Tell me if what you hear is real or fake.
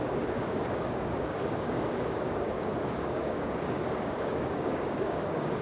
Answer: fake